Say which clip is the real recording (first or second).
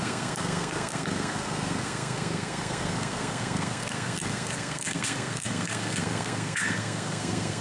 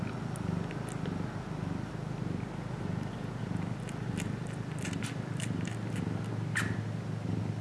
second